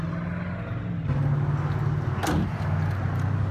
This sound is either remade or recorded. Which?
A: recorded